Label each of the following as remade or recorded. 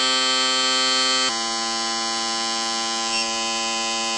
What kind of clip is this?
recorded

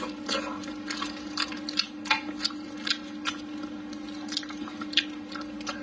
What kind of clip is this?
recorded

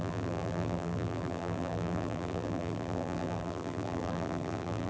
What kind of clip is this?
remade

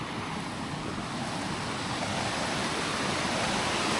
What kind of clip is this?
recorded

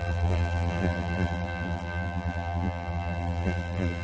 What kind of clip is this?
remade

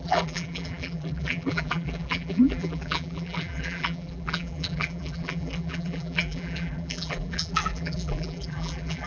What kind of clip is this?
remade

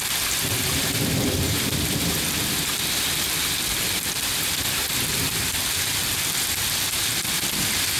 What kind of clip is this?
remade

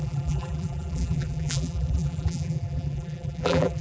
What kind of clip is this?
remade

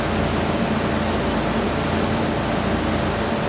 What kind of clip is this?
recorded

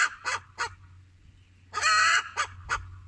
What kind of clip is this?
remade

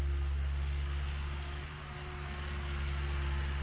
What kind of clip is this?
recorded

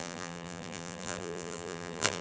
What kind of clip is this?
remade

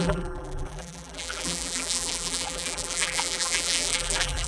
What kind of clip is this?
remade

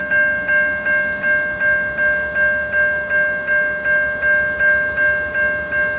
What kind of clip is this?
recorded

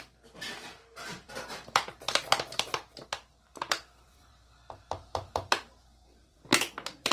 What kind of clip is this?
remade